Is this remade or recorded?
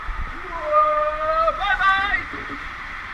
remade